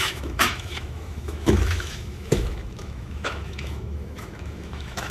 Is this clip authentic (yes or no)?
no